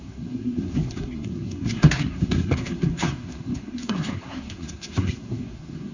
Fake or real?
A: fake